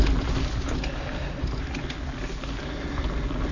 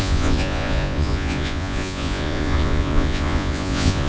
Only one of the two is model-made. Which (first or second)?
second